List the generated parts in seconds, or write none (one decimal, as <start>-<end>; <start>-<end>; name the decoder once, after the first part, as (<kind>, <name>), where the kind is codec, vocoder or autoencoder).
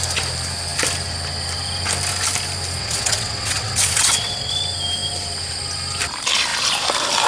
2.8-4.5 (vocoder, WaveNeXt)